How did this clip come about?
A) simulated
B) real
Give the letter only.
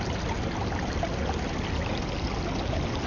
B